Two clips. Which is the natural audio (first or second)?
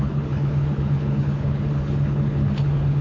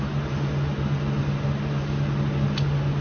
second